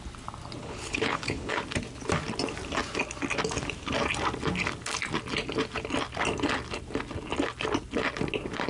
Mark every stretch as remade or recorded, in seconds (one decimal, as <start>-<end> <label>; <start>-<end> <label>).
0.0-0.6 recorded; 0.6-1.6 remade; 1.6-8.7 recorded